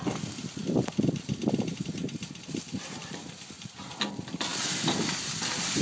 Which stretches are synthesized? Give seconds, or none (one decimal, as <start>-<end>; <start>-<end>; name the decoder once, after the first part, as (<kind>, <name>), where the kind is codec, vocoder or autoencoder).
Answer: 1.4-3.9 (vocoder, BigVGAN v2)